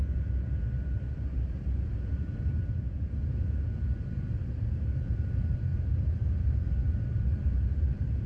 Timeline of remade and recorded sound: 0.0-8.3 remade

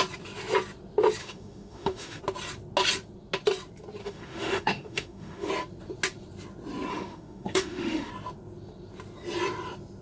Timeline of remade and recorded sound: 0.0-1.2 recorded; 1.2-2.2 remade; 2.2-4.0 recorded; 4.0-5.5 remade; 5.5-6.9 recorded; 6.9-8.1 remade; 8.1-10.0 recorded

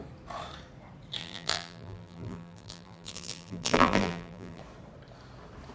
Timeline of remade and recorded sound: 0.0-1.2 recorded; 1.2-4.6 remade; 4.6-5.7 recorded

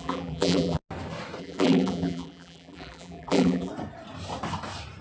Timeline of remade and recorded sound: 0.0-0.8 remade; 0.8-1.4 recorded; 1.4-3.7 remade; 3.7-5.0 recorded